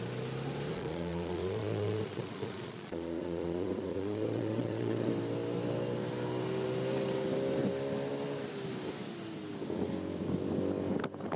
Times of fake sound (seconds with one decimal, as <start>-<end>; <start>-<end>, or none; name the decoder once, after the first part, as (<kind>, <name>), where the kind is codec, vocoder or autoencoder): 0.7-5.1 (vocoder, Vocos)